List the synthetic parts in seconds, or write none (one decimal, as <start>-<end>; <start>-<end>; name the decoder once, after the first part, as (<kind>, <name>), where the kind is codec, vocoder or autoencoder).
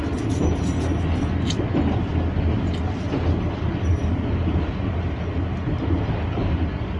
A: none